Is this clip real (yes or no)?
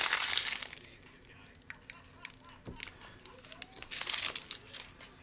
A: yes